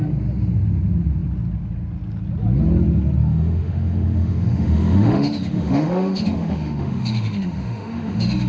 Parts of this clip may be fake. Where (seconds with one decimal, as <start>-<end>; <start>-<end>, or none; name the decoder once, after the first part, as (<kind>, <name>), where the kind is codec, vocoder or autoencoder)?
3.2-8.5 (autoencoder, DAC-VAE)